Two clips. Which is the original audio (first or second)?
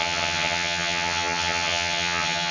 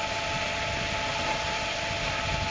second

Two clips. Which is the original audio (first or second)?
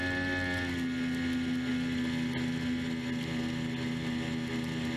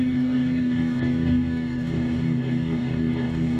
first